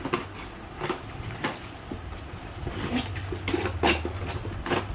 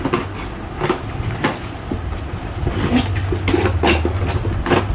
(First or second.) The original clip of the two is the second